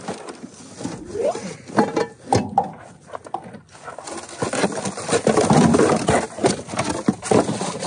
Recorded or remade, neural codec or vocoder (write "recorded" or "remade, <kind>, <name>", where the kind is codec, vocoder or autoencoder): recorded